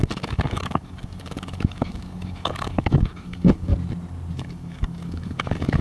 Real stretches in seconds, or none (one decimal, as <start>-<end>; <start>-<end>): 3.7-4.3